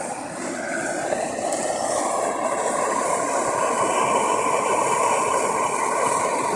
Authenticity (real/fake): real